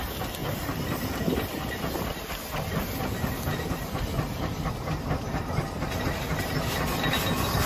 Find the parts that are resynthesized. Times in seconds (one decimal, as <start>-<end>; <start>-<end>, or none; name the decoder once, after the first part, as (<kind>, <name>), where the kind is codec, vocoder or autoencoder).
0.4-4.7 (vocoder, BigVGAN v2)